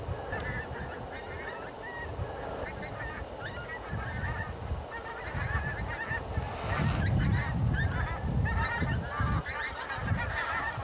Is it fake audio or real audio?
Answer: real